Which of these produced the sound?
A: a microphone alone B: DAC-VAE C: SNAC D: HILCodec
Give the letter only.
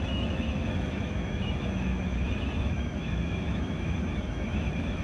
B